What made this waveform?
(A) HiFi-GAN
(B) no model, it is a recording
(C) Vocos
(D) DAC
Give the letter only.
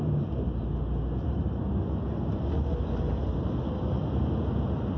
B